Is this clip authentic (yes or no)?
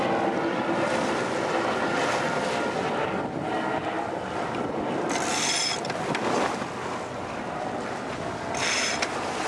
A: yes